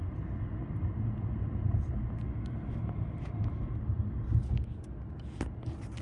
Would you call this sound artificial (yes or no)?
no